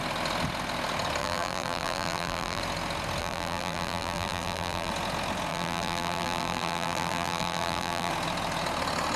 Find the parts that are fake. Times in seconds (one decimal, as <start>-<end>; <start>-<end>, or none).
1.2-2.6; 3.2-4.9; 5.5-8.1

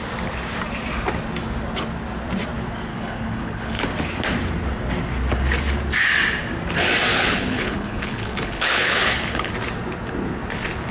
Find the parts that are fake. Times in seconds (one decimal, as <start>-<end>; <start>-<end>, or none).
2.9-3.8; 7.1-9.5

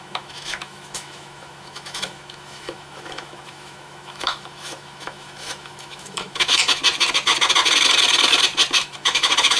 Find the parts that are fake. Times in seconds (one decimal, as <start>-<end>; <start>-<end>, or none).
0.0-6.8; 8.8-9.6

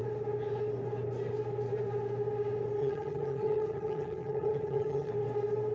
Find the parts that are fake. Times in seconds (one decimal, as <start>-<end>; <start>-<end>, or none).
2.8-5.1

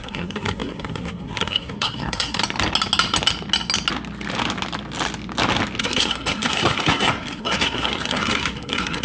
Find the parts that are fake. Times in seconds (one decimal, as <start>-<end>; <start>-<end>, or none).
0.0-2.4; 5.8-9.0

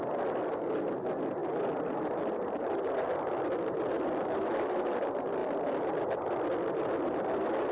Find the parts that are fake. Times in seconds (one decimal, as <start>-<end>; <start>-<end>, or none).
1.4-4.8; 5.4-6.1